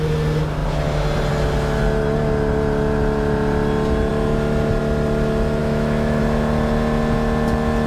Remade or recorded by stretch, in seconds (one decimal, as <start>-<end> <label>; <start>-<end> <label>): 0.0-5.6 recorded; 5.6-6.2 remade; 6.2-7.9 recorded